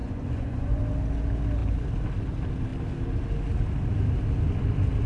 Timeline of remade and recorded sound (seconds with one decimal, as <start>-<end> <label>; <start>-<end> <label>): 0.0-0.8 remade; 0.8-5.1 recorded